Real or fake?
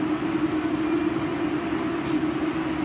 real